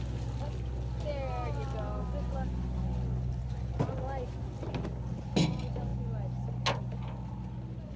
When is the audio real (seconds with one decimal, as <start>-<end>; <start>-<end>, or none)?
0.0-8.0